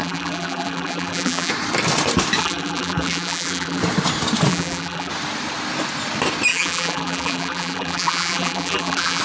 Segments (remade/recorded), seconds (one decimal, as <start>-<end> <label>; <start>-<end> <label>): 0.0-1.5 remade; 1.5-2.4 recorded; 2.4-3.8 remade; 3.8-4.5 recorded; 4.5-5.1 remade; 5.1-6.5 recorded; 6.5-9.2 remade